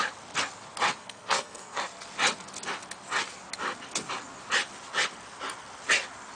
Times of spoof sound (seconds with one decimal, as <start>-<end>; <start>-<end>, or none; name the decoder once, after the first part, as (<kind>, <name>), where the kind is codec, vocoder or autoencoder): 1.0-1.8 (codec, SNAC)

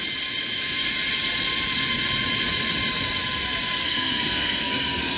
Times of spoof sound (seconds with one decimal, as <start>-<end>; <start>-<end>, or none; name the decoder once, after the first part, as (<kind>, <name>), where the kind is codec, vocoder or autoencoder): 3.8-5.2 (codec, SNAC)

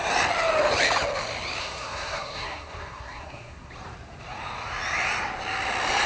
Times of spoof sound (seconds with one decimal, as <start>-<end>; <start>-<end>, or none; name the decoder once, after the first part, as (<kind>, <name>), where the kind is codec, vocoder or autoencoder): 1.6-3.7 (codec, SNAC)

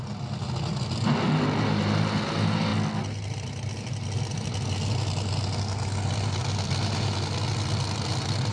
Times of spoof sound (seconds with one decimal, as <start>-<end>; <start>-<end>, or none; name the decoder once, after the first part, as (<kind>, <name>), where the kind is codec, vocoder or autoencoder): none

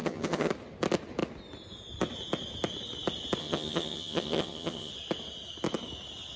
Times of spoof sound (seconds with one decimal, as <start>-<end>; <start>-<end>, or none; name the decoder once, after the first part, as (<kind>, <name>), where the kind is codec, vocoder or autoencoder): 0.0-0.5 (vocoder, HiFi-GAN); 3.4-4.9

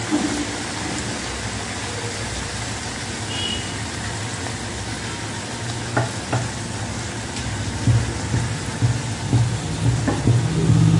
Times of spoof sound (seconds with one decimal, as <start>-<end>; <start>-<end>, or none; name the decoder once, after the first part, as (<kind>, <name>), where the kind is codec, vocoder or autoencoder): none

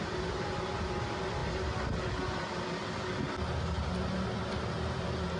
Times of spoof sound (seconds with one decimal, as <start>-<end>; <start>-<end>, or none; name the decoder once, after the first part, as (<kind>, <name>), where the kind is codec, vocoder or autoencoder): none